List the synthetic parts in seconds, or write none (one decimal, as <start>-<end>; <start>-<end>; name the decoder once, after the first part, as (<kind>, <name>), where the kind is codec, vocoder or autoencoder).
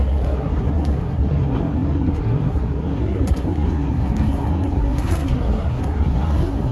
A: 0.0-6.7 (codec, SNAC)